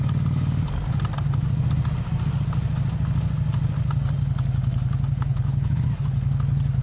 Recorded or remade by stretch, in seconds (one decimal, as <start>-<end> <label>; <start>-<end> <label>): 0.0-5.3 recorded; 5.3-5.9 remade; 5.9-6.8 recorded